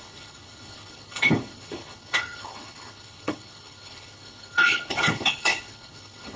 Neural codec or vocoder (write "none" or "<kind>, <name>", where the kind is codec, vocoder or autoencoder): codec, HILCodec